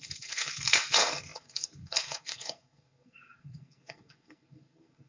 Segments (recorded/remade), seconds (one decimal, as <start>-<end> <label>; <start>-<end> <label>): 0.0-5.1 remade

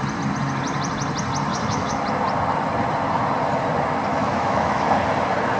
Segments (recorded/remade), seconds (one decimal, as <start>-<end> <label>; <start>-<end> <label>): 0.0-1.5 recorded; 1.5-2.0 remade; 2.0-4.1 recorded; 4.1-4.9 remade; 4.9-5.6 recorded